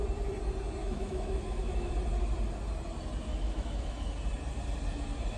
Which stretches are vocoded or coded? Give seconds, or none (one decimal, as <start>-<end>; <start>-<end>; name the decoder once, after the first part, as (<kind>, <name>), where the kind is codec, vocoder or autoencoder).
0.8-1.9 (autoencoder, DAC-VAE); 3.3-4.1